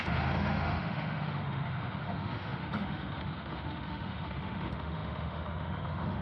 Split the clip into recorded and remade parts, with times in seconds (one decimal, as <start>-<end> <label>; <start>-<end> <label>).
0.0-6.2 remade